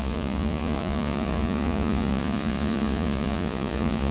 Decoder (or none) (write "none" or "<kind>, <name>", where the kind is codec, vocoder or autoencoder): vocoder, Vocos